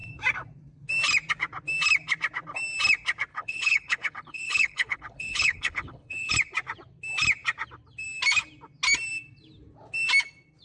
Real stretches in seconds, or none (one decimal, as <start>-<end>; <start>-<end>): 0.0-3.3; 6.3-10.6